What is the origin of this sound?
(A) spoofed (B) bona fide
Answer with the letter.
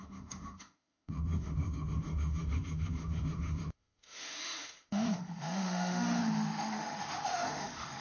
A